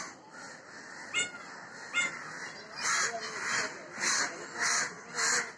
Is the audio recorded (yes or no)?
yes